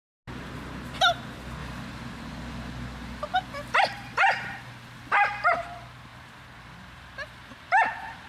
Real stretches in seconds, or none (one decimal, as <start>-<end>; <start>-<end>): 0.0-8.3